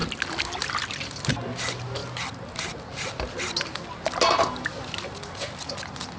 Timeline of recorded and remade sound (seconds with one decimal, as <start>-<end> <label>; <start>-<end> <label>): 0.0-6.2 recorded